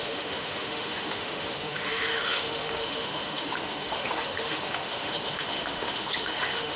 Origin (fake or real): fake